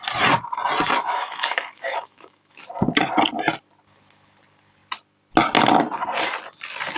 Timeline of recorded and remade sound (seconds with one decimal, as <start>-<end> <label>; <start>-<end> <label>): 0.0-1.0 recorded; 1.0-2.7 remade; 2.7-7.0 recorded